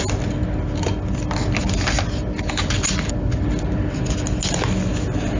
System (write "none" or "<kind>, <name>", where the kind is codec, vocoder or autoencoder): none